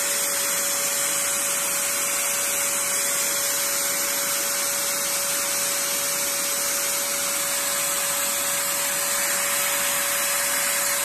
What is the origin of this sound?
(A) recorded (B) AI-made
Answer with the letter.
A